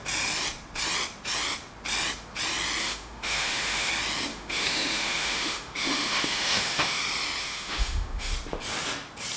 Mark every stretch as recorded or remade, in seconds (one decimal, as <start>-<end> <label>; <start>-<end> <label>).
0.0-2.8 recorded; 2.8-3.9 remade; 3.9-4.3 recorded; 4.3-7.0 remade; 7.0-7.4 recorded; 7.4-8.3 remade; 8.3-9.4 recorded